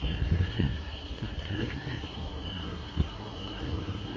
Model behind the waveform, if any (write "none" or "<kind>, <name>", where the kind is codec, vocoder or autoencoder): codec, SNAC